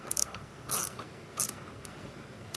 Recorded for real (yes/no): no